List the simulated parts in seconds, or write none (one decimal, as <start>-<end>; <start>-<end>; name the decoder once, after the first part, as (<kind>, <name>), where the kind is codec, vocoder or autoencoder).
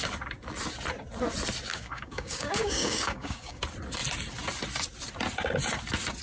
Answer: 1.7-3.6 (codec, DAC)